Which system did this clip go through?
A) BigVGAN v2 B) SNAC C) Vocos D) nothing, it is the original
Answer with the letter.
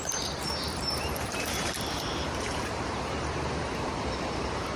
A